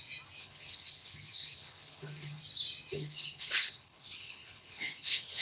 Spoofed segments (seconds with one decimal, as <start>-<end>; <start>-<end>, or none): 0.4-2.4; 2.9-5.4